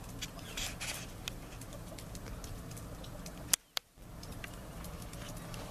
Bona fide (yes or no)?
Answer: yes